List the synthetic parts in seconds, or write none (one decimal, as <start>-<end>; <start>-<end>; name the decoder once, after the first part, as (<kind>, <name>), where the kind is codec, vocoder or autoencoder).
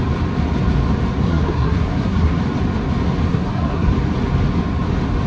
1.2-2.4 (codec, SNAC); 3.3-3.9